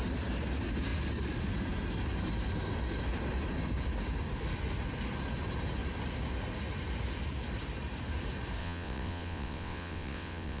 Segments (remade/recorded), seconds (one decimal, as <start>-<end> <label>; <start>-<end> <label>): 0.0-8.6 recorded; 8.6-10.6 remade